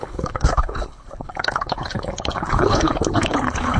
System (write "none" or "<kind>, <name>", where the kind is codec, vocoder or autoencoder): codec, HILCodec